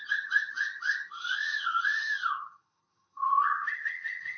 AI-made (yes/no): yes